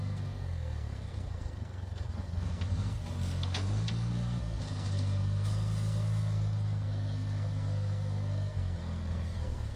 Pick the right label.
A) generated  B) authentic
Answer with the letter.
A